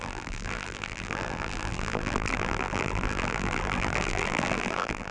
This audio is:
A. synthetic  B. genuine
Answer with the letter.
A